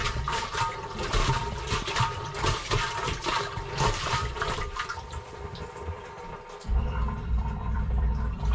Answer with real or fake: fake